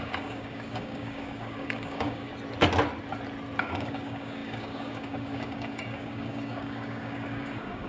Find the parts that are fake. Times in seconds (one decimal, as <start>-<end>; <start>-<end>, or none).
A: 0.0-2.3; 3.6-7.9